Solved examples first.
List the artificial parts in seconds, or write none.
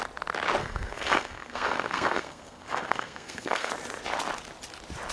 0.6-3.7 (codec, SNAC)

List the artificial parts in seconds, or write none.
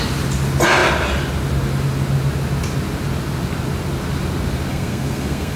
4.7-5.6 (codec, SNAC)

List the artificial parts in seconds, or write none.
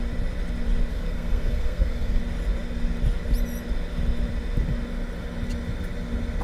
0.9-2.2 (codec, SNAC)